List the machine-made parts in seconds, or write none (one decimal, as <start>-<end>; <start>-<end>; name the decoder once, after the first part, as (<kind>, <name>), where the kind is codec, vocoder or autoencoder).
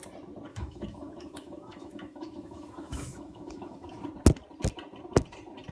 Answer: 0.5-3.9 (autoencoder, DAC-VAE)